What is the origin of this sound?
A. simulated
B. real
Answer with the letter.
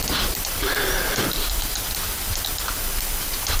B